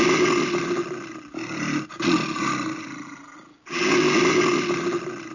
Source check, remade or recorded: recorded